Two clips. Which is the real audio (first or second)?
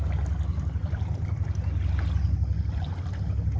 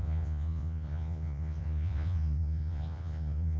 first